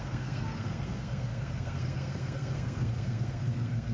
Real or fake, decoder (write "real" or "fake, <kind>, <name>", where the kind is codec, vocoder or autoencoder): fake, codec, SNAC